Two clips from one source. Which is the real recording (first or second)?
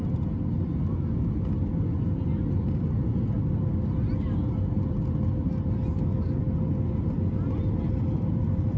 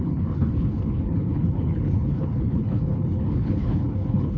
first